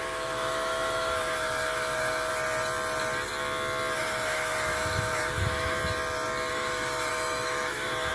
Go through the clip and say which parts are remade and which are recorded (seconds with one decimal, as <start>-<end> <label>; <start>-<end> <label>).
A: 0.0-2.3 remade; 2.3-4.0 recorded; 4.0-5.8 remade; 5.8-6.5 recorded; 6.5-8.1 remade